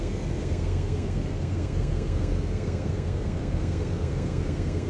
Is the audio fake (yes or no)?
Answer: yes